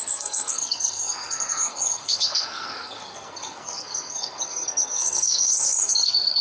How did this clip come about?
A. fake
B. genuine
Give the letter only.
A